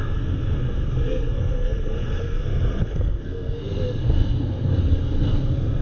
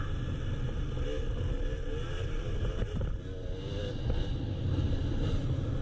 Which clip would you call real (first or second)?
second